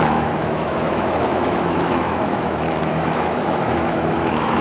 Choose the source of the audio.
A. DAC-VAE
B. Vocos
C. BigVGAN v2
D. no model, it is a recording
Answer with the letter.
A